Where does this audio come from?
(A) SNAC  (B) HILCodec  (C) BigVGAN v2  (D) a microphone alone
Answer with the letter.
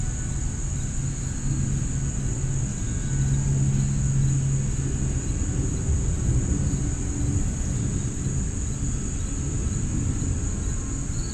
D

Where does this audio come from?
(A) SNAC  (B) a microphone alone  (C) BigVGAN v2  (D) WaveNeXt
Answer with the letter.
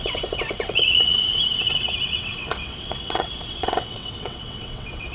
D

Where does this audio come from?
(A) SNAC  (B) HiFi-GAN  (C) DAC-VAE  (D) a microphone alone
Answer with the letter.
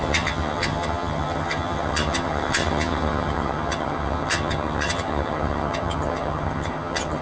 B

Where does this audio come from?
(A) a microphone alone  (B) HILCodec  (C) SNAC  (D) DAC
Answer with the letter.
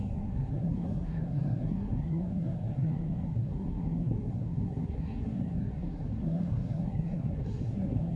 C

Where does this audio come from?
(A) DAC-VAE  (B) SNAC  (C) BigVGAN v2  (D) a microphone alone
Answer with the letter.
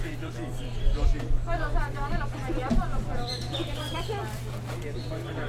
C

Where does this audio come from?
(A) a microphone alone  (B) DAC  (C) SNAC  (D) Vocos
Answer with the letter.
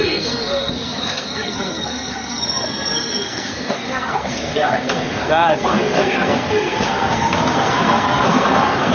C